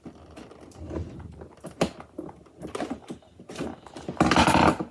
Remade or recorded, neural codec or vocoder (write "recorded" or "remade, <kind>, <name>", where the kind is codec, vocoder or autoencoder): recorded